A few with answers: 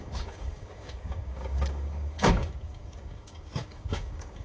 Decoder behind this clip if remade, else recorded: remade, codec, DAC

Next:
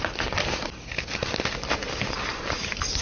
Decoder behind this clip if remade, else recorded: recorded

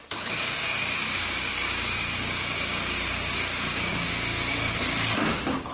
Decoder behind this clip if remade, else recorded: remade, codec, DAC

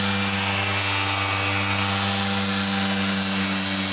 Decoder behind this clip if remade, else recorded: recorded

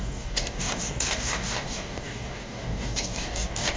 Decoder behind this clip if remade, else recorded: remade, codec, DAC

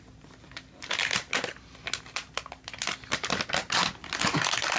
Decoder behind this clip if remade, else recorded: recorded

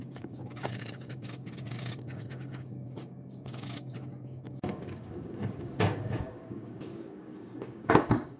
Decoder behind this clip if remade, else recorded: remade, codec, DAC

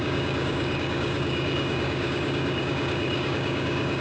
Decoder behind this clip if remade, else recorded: remade, codec, DAC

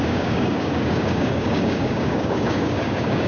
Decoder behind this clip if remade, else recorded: remade, codec, DAC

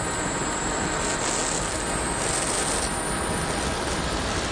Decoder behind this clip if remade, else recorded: recorded